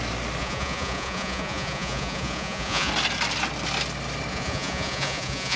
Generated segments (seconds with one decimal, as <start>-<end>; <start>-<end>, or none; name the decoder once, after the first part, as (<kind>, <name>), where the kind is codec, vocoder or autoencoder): 0.4-2.9 (vocoder, Vocos); 4.3-5.6